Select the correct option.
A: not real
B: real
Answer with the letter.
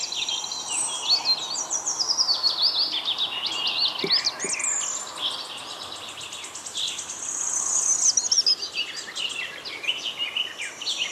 B